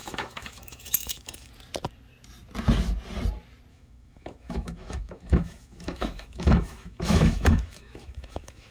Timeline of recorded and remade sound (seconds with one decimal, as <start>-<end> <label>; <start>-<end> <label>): 0.0-1.5 remade; 1.5-3.7 recorded; 3.7-8.7 remade